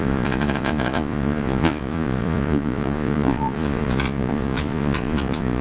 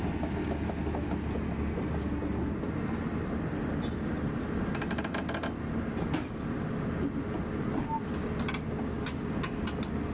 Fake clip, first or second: first